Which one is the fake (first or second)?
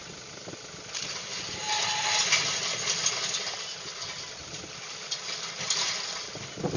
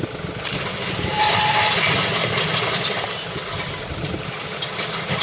second